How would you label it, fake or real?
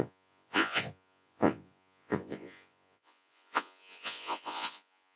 fake